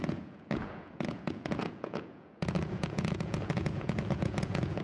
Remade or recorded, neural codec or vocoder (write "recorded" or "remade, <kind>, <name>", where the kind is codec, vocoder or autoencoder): remade, vocoder, Vocos